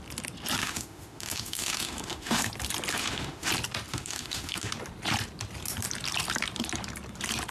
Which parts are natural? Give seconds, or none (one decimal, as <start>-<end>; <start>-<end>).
0.0-0.6; 2.5-2.9; 3.5-3.9; 4.7-7.5